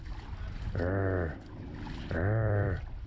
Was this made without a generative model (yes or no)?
yes